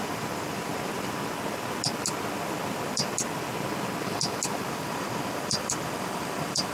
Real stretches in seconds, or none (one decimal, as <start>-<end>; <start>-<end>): 0.7-4.7